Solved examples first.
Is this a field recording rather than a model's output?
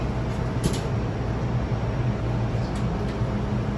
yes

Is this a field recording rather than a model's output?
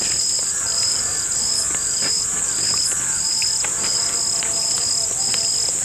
yes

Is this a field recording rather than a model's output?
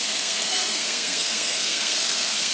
no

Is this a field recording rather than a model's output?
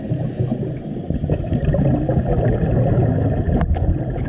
yes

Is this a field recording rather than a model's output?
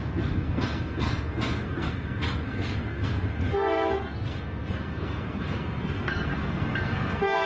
no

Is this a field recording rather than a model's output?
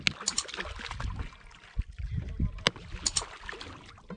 yes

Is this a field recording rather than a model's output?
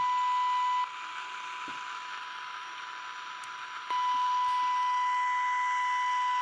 yes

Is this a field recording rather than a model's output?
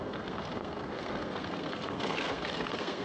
no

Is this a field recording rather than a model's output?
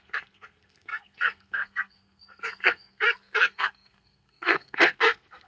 no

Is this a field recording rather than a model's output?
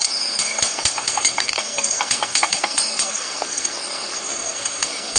no